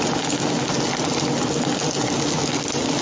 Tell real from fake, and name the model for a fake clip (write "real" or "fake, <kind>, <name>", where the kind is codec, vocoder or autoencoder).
real